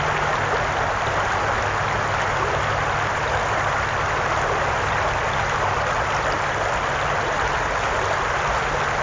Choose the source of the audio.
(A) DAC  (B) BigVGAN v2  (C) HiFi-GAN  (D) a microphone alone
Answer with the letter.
D